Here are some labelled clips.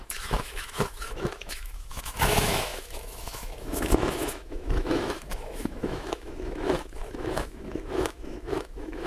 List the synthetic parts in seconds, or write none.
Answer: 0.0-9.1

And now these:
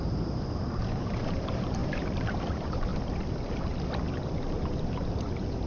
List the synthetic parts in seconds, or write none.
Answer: 0.0-2.9; 4.1-5.7

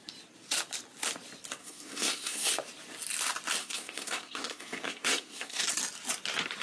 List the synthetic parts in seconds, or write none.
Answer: 1.6-2.5; 3.6-5.6

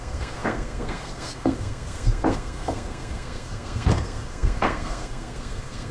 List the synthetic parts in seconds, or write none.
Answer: 0.0-5.9

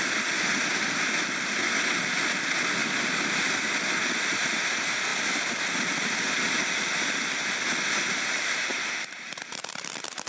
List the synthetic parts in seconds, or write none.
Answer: 5.1-6.3; 8.7-9.4

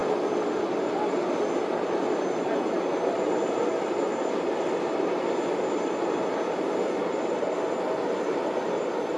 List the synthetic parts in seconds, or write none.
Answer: none

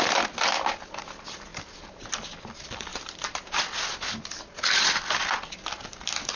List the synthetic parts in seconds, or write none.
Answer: 1.5-2.1; 2.9-3.5